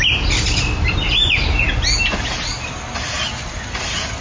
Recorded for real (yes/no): yes